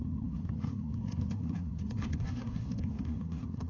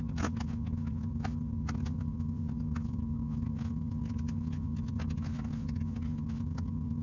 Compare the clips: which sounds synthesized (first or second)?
first